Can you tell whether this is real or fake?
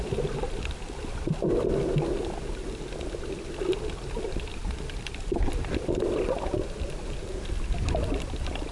real